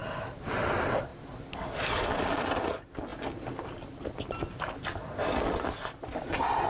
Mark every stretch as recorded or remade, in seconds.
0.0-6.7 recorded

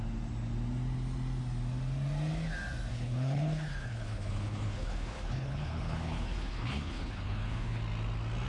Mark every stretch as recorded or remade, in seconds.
0.0-2.9 recorded; 2.9-7.8 remade; 7.8-8.5 recorded

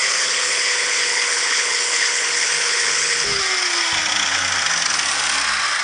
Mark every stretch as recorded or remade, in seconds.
0.0-3.4 remade; 3.4-5.8 recorded

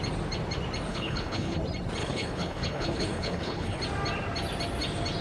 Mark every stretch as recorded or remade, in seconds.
0.0-0.9 recorded; 0.9-1.6 remade; 1.6-2.0 recorded; 2.0-3.8 remade; 3.8-5.2 recorded

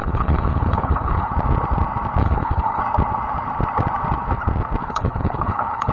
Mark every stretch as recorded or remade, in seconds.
0.0-1.3 remade; 1.3-2.2 recorded; 2.2-2.8 remade; 2.8-4.8 recorded; 4.8-5.9 remade

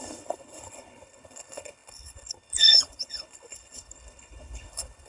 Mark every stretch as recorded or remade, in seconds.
0.0-5.1 remade

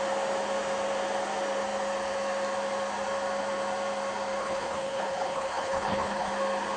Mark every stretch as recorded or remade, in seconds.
0.0-4.4 recorded; 4.4-6.3 remade; 6.3-6.8 recorded